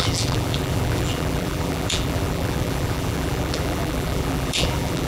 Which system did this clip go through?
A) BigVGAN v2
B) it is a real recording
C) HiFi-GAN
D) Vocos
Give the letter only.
A